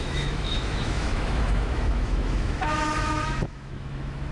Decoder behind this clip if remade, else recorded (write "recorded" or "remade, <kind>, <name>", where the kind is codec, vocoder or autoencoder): remade, autoencoder, DAC-VAE